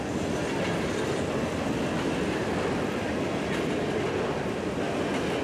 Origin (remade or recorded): recorded